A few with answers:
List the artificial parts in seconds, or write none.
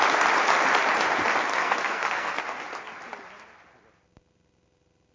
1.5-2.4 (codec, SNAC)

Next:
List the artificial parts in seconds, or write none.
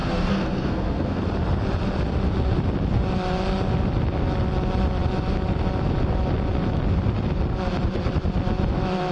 0.0-1.2 (codec, SNAC)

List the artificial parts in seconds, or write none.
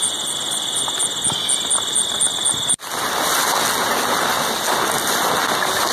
none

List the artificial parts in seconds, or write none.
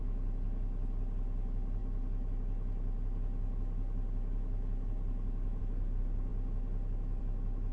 none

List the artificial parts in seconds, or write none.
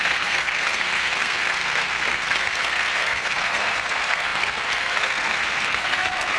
0.0-6.4 (codec, SNAC)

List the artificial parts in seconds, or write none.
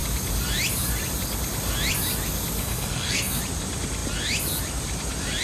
2.6-3.4 (codec, SNAC)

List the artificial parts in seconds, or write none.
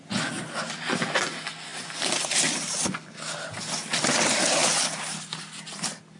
none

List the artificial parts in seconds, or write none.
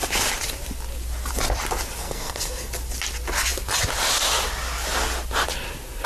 2.0-2.7 (codec, SNAC)